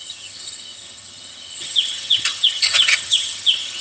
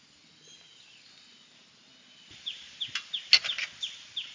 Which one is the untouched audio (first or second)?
second